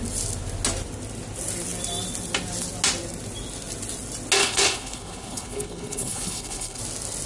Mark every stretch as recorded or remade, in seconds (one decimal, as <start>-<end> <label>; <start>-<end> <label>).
0.0-4.4 recorded; 4.4-6.8 remade; 6.8-7.3 recorded